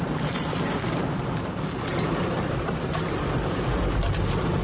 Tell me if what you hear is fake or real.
fake